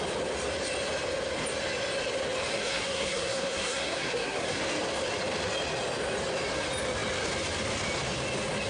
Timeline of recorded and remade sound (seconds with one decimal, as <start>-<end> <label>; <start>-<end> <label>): 0.0-2.5 recorded; 2.5-4.6 remade; 4.6-8.7 recorded